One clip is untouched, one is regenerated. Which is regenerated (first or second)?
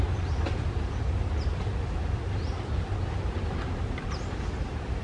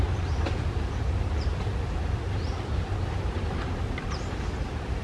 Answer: second